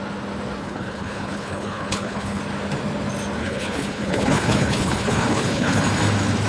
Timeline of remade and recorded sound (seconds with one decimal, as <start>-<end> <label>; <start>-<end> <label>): 0.0-0.6 recorded; 0.6-2.4 remade; 2.4-3.4 recorded; 3.4-5.8 remade; 5.8-6.5 recorded